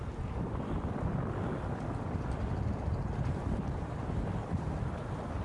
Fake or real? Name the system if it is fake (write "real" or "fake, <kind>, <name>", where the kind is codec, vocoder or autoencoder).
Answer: fake, vocoder, BigVGAN v2